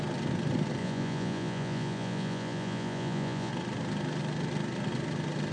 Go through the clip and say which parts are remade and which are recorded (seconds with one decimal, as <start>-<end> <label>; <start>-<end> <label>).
0.0-0.8 recorded; 0.8-3.5 remade; 3.5-5.5 recorded